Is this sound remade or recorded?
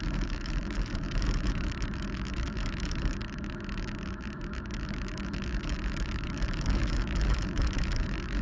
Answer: remade